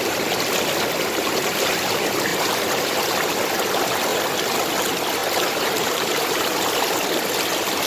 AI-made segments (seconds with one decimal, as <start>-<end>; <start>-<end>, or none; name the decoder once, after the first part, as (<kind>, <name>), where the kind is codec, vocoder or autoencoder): 2.3-3.1 (vocoder, BigVGAN v2); 5.2-6.8